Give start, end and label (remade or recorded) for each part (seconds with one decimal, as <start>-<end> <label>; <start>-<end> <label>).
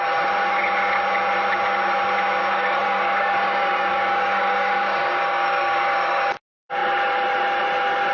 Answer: 0.0-2.4 recorded; 2.4-6.2 remade; 6.2-8.1 recorded